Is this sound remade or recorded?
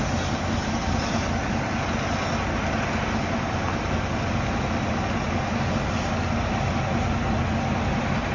recorded